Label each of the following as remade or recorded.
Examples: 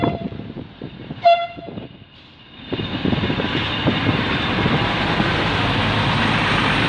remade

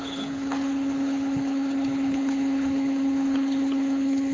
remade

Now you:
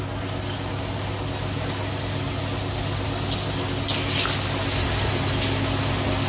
recorded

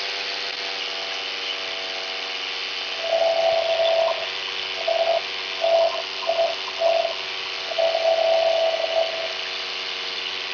recorded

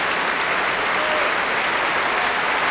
recorded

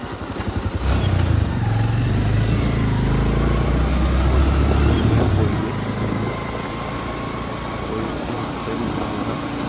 recorded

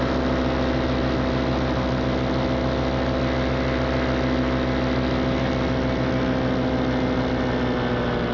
recorded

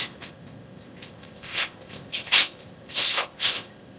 remade